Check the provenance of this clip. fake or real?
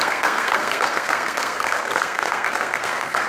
fake